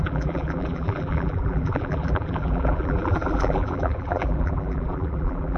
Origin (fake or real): fake